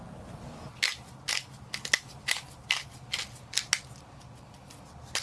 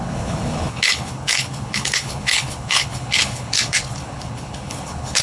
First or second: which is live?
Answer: first